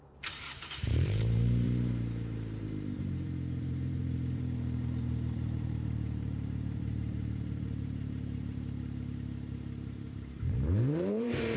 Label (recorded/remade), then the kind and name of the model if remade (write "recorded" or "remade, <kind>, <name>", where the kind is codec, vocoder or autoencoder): remade, vocoder, BigVGAN v2